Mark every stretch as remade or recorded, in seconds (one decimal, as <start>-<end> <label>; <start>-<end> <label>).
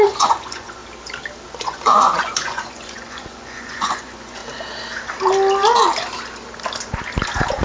0.0-0.8 remade; 0.8-1.6 recorded; 1.6-4.4 remade; 4.4-7.6 recorded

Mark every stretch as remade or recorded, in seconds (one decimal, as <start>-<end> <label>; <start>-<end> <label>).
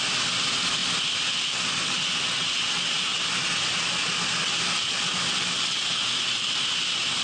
0.0-7.2 recorded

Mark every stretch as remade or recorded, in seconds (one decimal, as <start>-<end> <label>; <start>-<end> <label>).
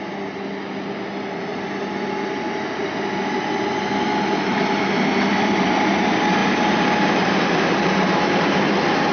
0.0-6.4 recorded; 6.4-8.6 remade; 8.6-9.1 recorded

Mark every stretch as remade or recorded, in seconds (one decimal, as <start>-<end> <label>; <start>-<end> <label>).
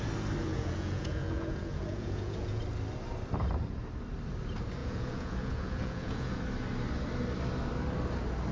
0.0-0.5 recorded; 0.5-2.6 remade; 2.6-4.8 recorded; 4.8-6.4 remade; 6.4-8.5 recorded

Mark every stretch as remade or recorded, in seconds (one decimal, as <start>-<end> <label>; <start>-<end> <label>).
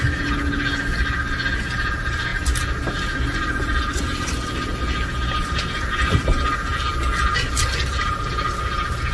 0.0-9.1 recorded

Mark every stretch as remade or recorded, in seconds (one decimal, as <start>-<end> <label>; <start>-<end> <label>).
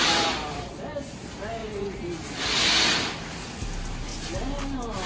0.0-5.1 recorded